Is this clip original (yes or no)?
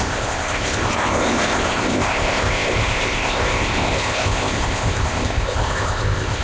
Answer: no